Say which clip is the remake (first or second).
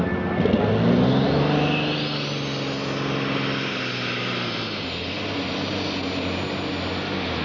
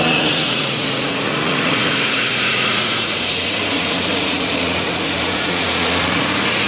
second